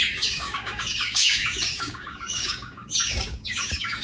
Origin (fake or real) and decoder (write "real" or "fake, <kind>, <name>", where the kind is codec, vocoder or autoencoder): fake, codec, DAC